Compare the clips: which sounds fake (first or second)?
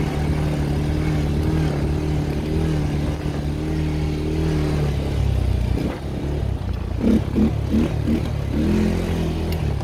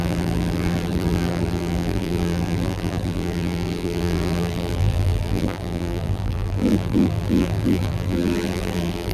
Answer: second